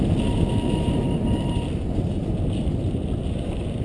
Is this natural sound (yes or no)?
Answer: yes